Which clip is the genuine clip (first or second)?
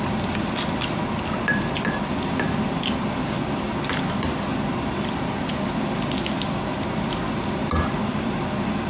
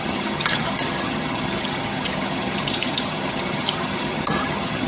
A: first